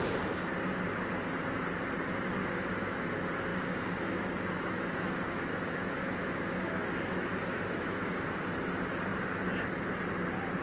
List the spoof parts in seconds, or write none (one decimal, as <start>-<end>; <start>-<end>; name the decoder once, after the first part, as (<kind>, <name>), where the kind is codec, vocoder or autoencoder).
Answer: 2.4-3.1 (autoencoder, DAC-VAE); 3.5-8.4